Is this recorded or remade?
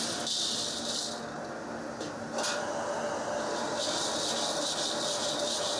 recorded